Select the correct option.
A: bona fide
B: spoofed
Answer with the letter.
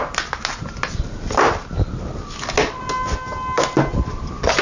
A